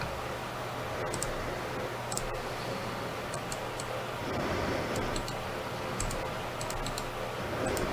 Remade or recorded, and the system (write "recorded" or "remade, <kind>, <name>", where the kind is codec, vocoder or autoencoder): recorded